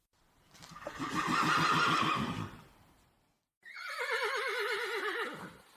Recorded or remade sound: recorded